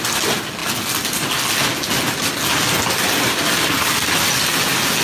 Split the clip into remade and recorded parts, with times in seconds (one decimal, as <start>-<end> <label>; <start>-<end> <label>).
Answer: 0.0-5.0 recorded